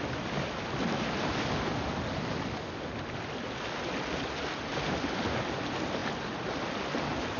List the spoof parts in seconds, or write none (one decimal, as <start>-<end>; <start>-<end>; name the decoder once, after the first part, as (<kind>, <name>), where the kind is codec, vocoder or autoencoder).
none

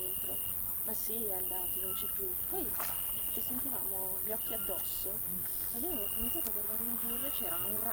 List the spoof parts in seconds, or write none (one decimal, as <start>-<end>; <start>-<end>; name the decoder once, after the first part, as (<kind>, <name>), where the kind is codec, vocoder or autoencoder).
none